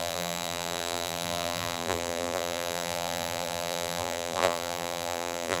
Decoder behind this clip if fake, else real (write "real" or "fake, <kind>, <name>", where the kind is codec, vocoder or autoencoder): fake, vocoder, BigVGAN v2